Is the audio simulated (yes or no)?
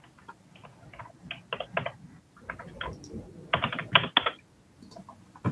no